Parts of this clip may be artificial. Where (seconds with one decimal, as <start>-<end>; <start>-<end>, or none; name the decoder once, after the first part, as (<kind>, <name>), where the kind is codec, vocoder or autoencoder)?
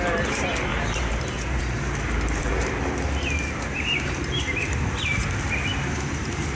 0.7-1.6 (vocoder, BigVGAN v2); 2.4-4.4; 5.7-6.5